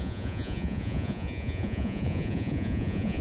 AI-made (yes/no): yes